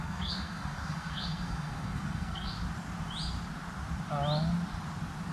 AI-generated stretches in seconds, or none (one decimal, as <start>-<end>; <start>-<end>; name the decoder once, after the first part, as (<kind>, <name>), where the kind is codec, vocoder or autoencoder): 0.0-2.5 (codec, SNAC)